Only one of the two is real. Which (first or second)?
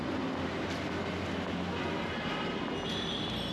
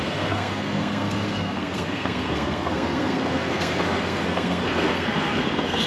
first